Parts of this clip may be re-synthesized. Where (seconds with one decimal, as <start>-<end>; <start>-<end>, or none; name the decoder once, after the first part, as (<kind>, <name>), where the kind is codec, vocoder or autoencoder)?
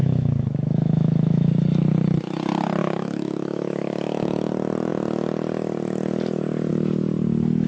0.0-1.5 (autoencoder, DAC-VAE); 2.8-4.5